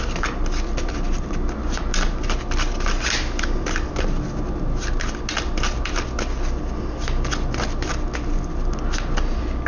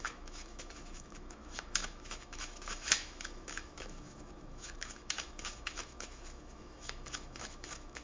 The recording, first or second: first